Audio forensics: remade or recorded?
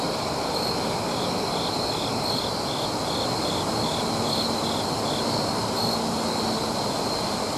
recorded